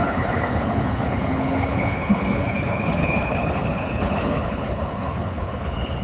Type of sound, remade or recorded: remade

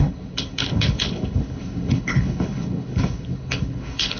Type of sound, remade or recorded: remade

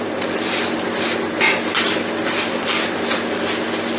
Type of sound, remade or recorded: recorded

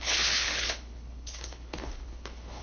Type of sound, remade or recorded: remade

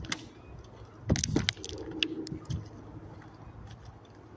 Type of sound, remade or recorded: recorded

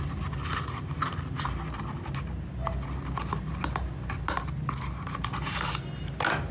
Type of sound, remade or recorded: recorded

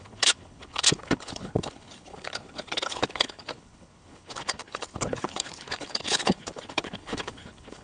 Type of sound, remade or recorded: remade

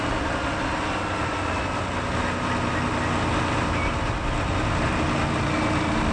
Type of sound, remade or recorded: recorded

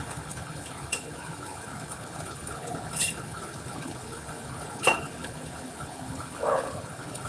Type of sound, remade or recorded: remade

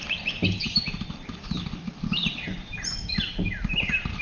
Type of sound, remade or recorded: recorded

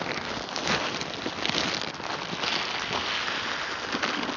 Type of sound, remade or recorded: recorded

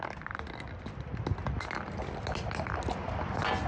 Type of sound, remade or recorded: recorded